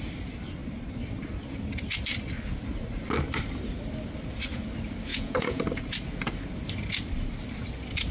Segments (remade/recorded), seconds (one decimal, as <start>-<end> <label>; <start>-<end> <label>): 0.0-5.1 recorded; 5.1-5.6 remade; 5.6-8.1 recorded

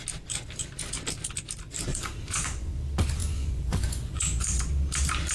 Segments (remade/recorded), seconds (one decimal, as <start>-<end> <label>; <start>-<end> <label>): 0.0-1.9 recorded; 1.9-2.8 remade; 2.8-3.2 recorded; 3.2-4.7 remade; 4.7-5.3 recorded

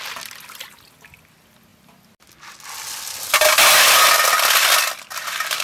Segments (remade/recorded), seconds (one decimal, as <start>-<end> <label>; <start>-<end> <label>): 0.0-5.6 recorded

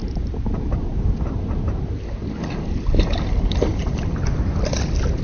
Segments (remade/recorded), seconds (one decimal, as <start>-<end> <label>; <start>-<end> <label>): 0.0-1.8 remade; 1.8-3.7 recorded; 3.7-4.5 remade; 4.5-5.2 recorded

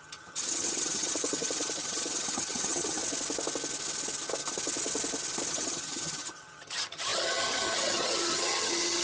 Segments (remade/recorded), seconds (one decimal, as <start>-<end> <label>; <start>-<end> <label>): 0.0-3.0 remade; 3.0-5.5 recorded; 5.5-9.0 remade

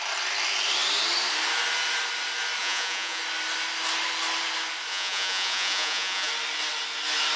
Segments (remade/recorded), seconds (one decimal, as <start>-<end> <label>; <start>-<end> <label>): 0.0-2.6 recorded; 2.6-3.2 remade; 3.2-4.9 recorded; 4.9-6.3 remade; 6.3-7.4 recorded